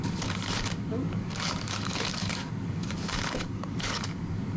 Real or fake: fake